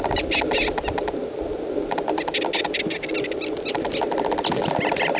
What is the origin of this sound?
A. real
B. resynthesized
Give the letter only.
A